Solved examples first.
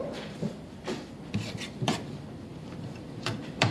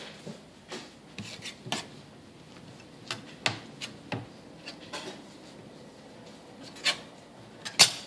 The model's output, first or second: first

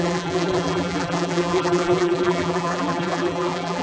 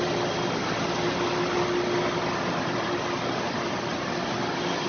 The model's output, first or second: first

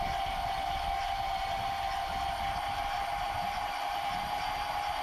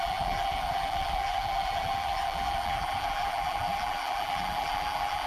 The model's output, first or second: second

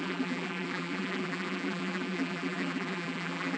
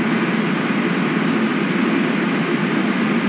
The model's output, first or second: first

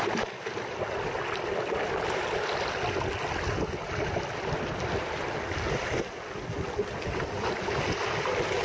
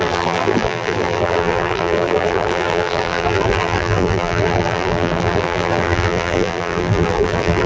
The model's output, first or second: second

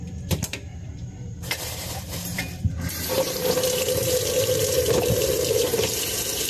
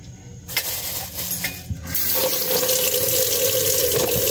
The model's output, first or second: first